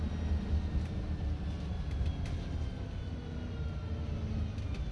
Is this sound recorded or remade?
recorded